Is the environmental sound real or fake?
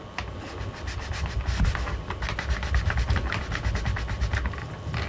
real